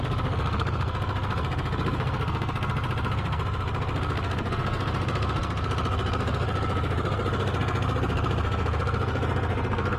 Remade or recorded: remade